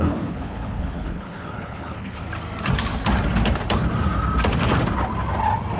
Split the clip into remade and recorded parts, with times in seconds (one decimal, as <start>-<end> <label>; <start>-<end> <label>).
0.0-2.2 remade; 2.2-5.8 recorded